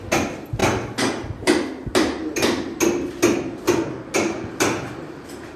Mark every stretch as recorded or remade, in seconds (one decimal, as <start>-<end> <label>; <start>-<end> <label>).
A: 0.0-5.6 recorded